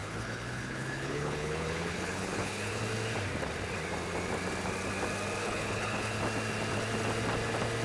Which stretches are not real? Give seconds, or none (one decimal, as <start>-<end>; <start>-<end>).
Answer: 0.0-2.8; 5.4-6.2